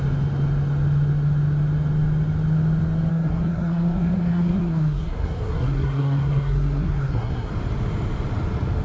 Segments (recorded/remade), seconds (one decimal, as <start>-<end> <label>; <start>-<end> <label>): 0.0-3.1 recorded; 3.1-7.5 remade; 7.5-8.8 recorded